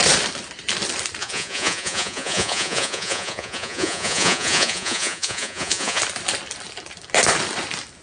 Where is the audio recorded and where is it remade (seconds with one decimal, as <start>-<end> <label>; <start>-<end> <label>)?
0.0-1.2 recorded; 1.2-6.0 remade; 6.0-8.0 recorded